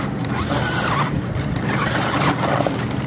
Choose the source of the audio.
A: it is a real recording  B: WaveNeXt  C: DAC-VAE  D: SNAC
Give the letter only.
A